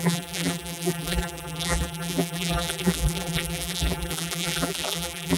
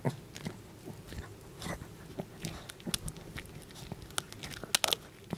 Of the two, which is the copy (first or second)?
first